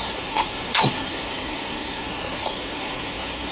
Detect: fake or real fake